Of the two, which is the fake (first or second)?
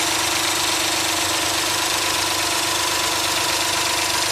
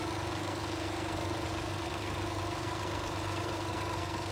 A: second